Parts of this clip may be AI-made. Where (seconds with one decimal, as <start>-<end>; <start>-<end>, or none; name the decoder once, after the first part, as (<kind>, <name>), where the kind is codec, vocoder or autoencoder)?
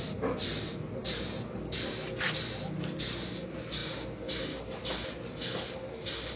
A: none